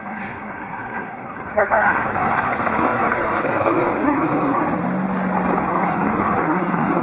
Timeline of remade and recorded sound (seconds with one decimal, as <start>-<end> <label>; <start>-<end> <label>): 0.0-4.6 remade; 4.6-5.7 recorded; 5.7-7.0 remade